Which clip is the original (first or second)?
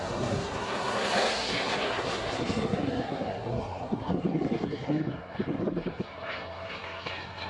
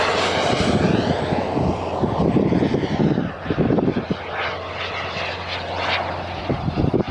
second